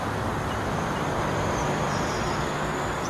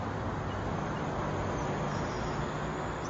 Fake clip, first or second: first